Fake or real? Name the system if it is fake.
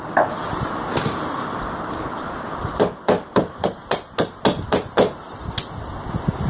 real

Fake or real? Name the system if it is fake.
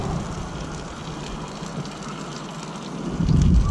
real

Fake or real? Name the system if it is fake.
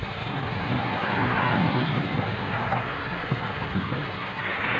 fake, codec, SNAC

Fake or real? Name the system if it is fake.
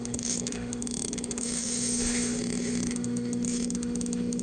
fake, autoencoder, DAC-VAE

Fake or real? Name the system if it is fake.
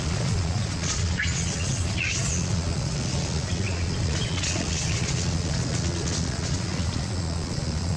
fake, vocoder, Vocos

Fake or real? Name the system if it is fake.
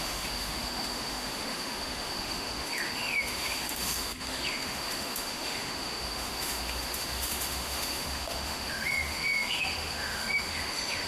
fake, autoencoder, DAC-VAE